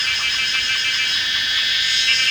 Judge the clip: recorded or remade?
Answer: recorded